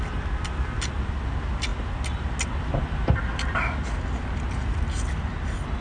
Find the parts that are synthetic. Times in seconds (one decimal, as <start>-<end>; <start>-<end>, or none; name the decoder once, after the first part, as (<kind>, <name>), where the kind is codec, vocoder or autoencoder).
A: none